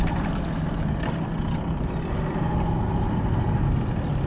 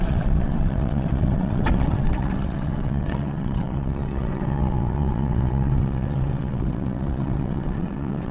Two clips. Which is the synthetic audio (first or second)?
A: second